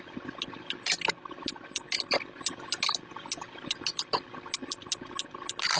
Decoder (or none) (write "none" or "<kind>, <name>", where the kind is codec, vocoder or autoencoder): none